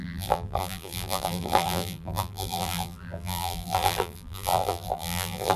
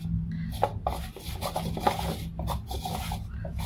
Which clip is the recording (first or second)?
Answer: second